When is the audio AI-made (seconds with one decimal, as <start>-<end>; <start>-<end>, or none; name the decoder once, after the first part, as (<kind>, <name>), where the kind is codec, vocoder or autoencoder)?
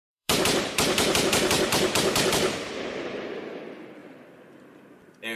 0.0-3.2 (vocoder, BigVGAN v2)